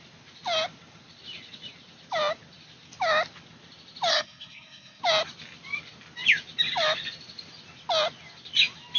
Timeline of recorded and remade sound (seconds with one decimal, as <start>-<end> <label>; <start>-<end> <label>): 0.0-4.1 recorded; 4.1-5.0 remade; 5.0-9.0 recorded